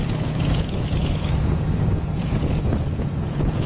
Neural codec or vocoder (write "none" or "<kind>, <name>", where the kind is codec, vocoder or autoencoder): vocoder, Vocos